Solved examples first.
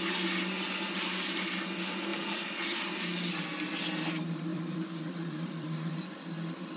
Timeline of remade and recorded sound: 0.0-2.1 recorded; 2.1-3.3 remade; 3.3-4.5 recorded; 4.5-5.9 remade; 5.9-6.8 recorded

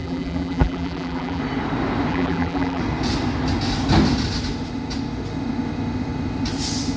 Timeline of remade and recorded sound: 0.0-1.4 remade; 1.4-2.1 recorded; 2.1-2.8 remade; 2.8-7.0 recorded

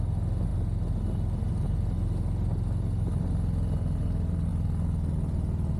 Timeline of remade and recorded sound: 0.0-5.8 recorded

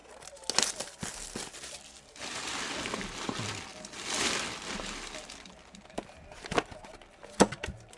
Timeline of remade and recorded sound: 0.0-1.6 recorded; 1.6-8.0 remade

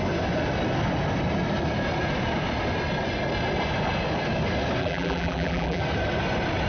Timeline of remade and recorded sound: 0.0-4.8 recorded; 4.8-5.8 remade; 5.8-6.7 recorded